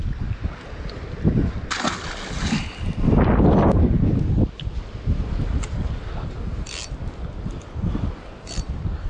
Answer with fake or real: real